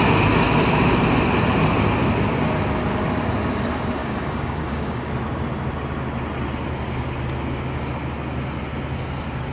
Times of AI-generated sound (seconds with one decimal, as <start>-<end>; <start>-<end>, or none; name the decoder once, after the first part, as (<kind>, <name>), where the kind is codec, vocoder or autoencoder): 4.0-5.1 (codec, DAC)